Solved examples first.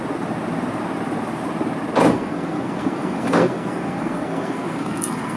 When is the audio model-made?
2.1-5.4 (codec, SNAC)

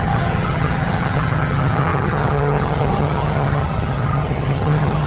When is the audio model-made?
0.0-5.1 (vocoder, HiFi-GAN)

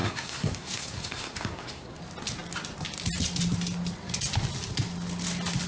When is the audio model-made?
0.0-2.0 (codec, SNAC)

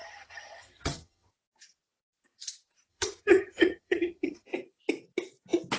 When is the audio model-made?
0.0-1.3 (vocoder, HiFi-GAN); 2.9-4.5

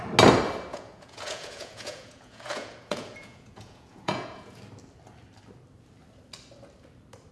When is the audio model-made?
0.7-4.6 (vocoder, Vocos)